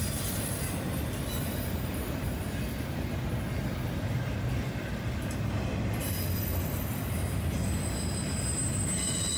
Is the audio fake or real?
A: real